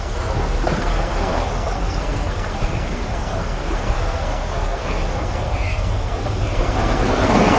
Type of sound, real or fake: fake